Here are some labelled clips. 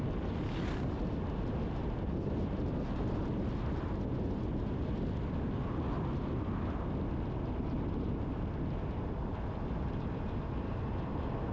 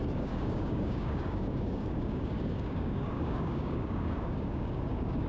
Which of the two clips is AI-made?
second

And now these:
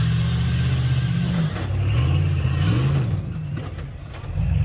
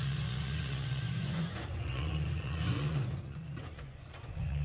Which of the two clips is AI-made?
second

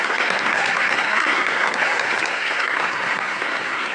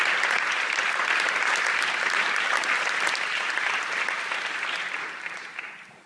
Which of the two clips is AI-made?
first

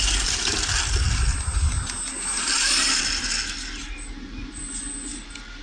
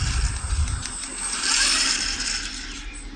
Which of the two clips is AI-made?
second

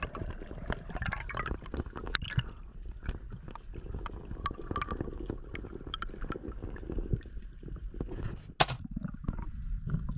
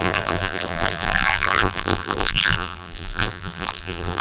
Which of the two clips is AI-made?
second